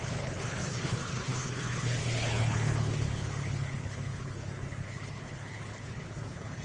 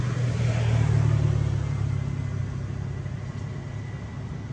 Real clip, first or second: second